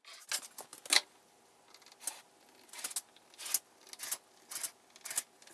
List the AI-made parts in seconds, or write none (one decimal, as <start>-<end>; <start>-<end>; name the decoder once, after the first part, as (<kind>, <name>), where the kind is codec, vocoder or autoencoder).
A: none